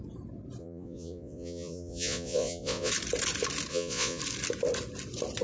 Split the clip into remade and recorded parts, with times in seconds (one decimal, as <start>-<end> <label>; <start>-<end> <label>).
0.0-0.6 recorded; 0.6-2.9 remade; 2.9-3.7 recorded; 3.7-4.2 remade; 4.2-5.4 recorded